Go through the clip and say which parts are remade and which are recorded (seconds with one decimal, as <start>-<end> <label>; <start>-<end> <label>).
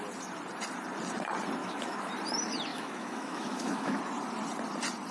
0.0-1.6 recorded; 1.6-2.1 remade; 2.1-2.7 recorded; 2.7-4.0 remade; 4.0-5.1 recorded